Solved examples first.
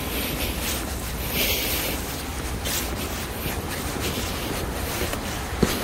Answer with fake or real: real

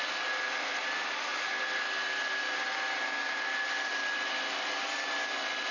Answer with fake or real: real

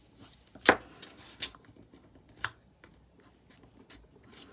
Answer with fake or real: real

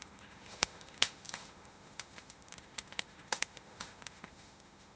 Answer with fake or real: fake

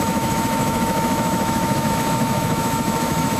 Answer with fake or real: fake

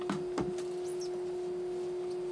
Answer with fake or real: real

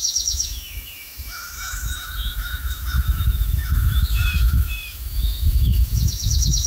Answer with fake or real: fake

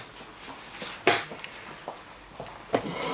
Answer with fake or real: real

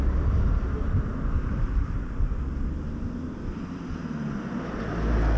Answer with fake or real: real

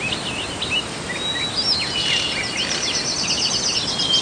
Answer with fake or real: real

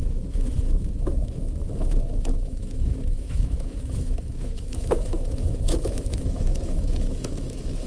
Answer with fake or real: fake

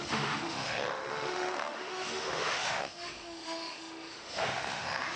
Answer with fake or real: fake